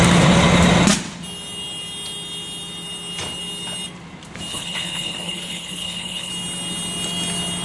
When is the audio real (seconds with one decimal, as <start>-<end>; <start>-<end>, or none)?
0.0-4.5; 6.3-7.6